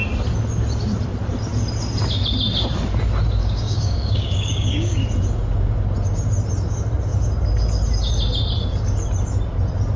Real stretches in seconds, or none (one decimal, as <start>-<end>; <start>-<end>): 0.0-3.4; 5.0-10.0